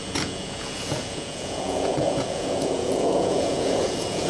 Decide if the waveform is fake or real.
fake